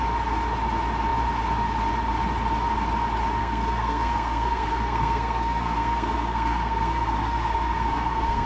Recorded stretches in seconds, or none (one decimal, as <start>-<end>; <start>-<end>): 0.0-3.4